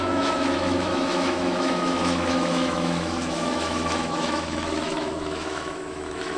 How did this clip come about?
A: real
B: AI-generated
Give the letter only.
B